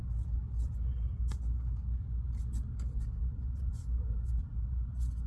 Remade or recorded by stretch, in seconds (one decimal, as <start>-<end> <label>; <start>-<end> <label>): 0.0-3.2 recorded; 3.2-3.7 remade; 3.7-4.4 recorded; 4.4-5.3 remade